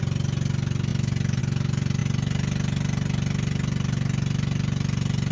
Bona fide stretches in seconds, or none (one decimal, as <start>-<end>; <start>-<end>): 0.0-5.3